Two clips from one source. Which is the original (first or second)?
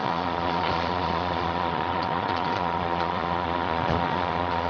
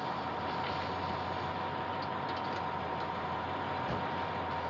second